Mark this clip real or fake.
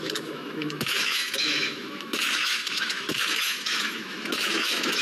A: fake